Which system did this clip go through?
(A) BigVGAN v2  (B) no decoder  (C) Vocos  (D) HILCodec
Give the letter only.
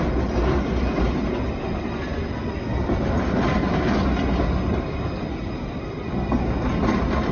B